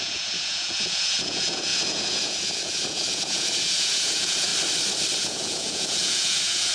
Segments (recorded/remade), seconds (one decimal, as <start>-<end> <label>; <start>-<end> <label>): 0.0-4.5 remade; 4.5-5.2 recorded; 5.2-6.7 remade